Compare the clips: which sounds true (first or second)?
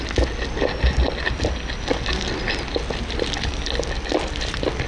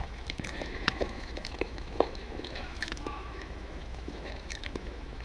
first